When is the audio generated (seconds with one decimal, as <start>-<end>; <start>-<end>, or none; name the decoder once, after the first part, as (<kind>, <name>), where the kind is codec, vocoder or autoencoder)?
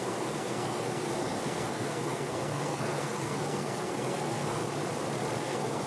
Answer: 0.0-4.6 (codec, SNAC); 5.4-5.9